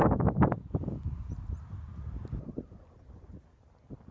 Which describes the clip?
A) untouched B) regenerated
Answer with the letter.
A